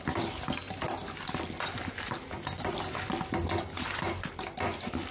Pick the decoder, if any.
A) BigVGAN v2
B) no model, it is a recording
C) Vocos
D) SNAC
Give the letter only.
B